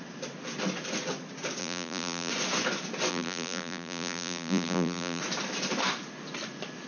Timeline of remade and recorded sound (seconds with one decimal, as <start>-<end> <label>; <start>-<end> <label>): 0.0-1.6 recorded; 1.6-2.3 remade; 2.3-3.1 recorded; 3.1-5.2 remade; 5.2-6.9 recorded